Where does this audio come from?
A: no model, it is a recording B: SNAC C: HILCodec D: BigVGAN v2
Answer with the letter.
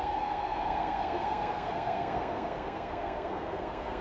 B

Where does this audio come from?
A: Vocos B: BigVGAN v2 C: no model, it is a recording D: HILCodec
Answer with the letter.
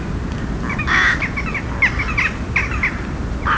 C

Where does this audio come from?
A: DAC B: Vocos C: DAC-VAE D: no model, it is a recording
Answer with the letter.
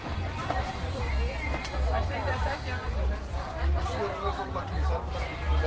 D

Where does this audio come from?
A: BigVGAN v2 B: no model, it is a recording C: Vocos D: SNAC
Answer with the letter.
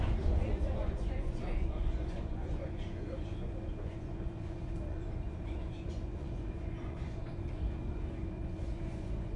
C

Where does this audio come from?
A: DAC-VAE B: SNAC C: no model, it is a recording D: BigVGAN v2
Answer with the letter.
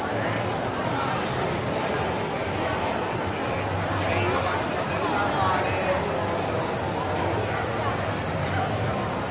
C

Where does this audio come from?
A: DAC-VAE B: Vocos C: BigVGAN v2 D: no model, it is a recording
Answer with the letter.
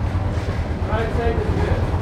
D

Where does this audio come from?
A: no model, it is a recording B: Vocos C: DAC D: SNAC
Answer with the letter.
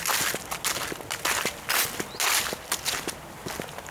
A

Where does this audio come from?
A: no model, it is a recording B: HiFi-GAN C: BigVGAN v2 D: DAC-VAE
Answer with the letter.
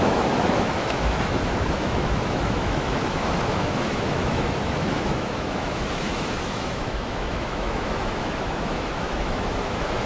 D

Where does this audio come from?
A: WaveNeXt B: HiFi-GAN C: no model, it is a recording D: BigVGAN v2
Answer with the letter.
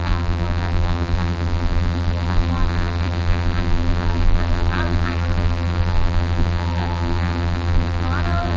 D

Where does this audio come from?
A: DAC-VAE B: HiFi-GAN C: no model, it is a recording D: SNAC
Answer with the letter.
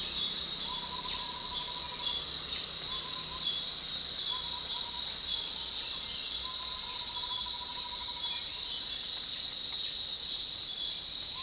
C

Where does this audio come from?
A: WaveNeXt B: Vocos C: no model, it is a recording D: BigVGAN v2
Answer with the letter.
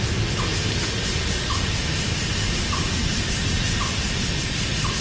C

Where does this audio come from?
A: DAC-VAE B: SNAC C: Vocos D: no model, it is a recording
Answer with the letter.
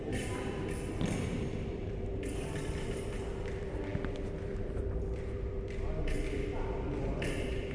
D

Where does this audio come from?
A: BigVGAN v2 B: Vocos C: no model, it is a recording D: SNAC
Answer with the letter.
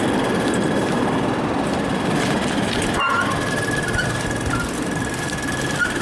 C